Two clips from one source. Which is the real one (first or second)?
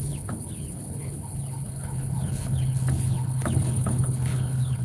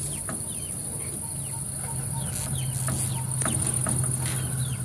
second